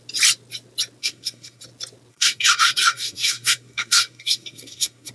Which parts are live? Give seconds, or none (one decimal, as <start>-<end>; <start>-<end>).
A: 0.0-1.0; 1.6-2.1

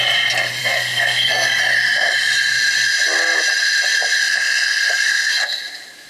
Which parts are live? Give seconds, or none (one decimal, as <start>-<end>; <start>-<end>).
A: 0.0-0.6; 1.6-4.2; 5.3-6.1

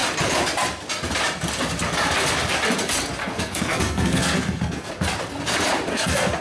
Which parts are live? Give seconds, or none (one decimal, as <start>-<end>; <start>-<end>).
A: 0.0-3.2; 4.9-5.9

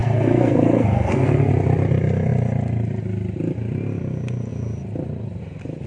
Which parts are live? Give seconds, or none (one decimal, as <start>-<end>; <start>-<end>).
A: 1.5-5.9

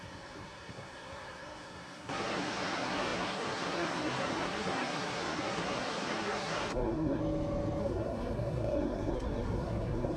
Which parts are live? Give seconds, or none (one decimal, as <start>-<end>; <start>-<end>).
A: 7.2-7.8